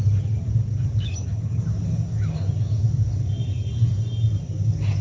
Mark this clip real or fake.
real